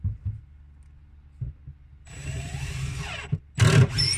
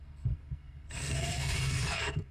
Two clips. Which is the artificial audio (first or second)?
second